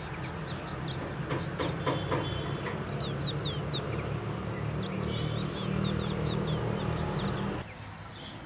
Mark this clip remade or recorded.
recorded